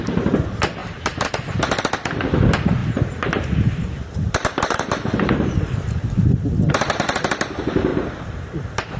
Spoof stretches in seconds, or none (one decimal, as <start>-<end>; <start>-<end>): 0.8-1.3; 2.8-6.7; 7.9-9.0